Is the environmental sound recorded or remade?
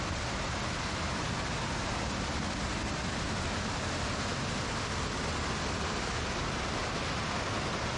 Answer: recorded